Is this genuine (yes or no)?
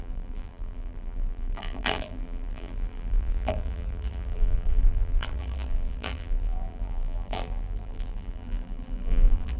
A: no